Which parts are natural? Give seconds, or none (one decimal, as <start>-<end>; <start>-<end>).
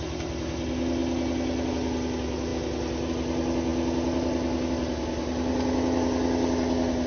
0.0-7.1